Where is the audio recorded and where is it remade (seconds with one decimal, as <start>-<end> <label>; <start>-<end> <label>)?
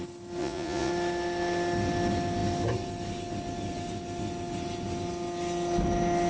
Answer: 0.0-0.4 recorded; 0.4-0.9 remade; 0.9-6.3 recorded